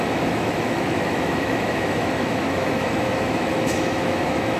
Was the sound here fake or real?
fake